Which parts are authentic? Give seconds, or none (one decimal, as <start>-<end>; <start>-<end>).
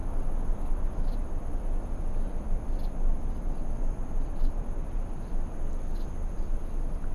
0.0-7.1